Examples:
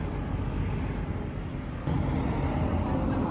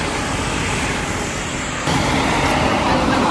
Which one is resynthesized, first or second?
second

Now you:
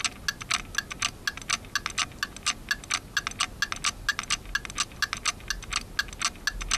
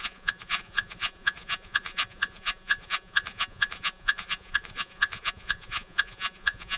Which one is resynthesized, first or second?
second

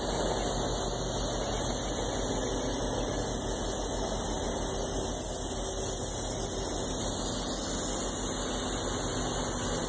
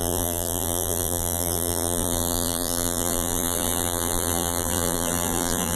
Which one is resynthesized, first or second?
second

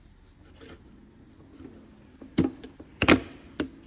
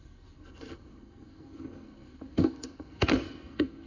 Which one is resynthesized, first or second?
second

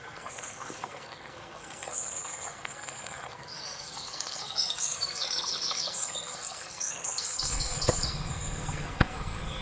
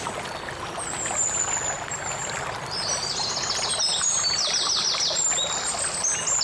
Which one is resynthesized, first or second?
first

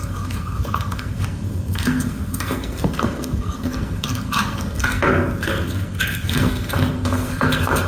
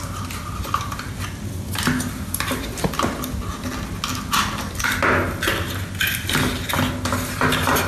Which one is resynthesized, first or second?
first